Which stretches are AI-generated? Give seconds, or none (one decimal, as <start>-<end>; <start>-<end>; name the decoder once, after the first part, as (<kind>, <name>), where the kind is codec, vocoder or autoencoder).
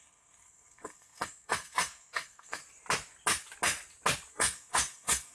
0.0-2.6 (codec, SNAC); 4.3-5.3